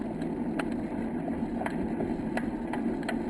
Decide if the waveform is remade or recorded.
recorded